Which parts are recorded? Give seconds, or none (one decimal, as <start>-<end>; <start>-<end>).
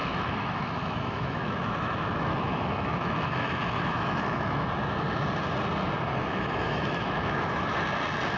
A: 4.7-6.2; 7.8-8.4